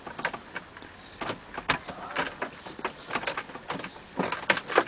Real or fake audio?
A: real